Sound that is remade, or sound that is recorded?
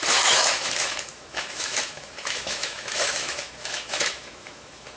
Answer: remade